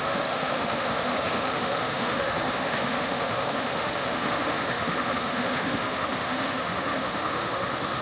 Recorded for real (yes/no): no